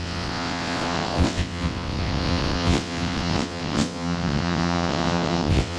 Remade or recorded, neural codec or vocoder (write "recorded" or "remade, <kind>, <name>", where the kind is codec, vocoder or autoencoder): remade, vocoder, WaveNeXt